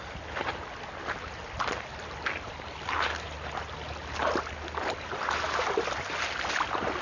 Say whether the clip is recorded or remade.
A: recorded